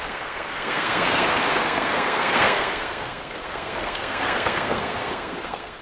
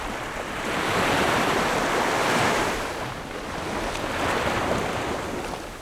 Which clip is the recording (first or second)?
second